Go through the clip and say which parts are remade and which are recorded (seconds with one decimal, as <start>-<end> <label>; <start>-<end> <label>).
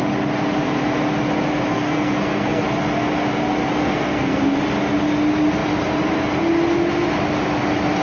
0.0-1.7 recorded; 1.7-2.6 remade; 2.6-3.8 recorded; 3.8-4.5 remade; 4.5-8.0 recorded